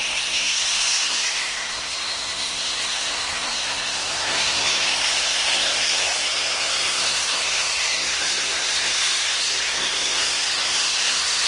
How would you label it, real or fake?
fake